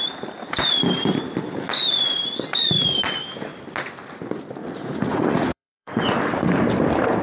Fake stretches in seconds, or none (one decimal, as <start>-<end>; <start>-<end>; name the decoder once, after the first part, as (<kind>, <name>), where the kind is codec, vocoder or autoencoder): 4.6-6.0 (vocoder, Vocos)